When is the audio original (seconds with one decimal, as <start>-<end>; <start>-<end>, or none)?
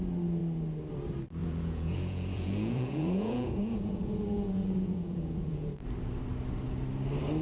0.0-1.4; 5.8-7.4